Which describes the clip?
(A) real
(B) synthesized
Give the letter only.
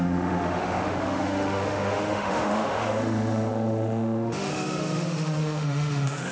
B